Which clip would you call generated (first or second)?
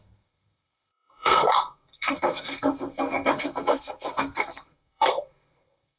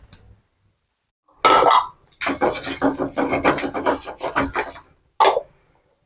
first